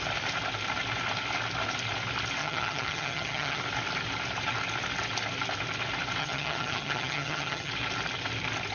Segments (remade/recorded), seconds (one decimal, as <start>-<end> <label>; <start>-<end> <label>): 0.0-2.4 recorded; 2.4-3.6 remade; 3.6-6.2 recorded; 6.2-7.7 remade; 7.7-8.7 recorded